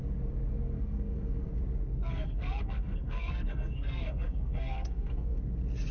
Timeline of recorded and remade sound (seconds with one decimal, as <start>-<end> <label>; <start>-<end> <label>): 0.0-0.5 recorded; 0.5-1.5 remade; 1.5-1.9 recorded; 1.9-5.4 remade; 5.4-5.9 recorded